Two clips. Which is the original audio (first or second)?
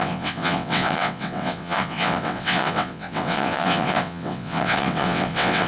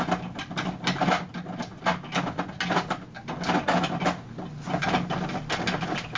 second